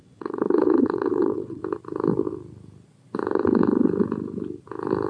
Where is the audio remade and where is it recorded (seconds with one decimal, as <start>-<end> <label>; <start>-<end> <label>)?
0.0-1.6 remade; 1.6-5.1 recorded